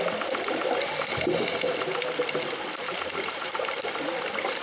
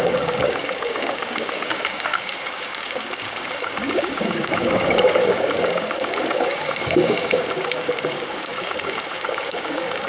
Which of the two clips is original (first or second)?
first